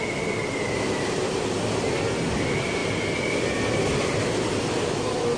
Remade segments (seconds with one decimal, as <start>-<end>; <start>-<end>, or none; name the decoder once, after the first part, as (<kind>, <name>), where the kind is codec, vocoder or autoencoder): none